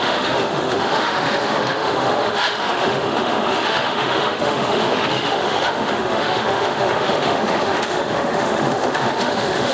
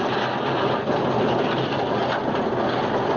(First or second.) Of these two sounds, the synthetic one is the first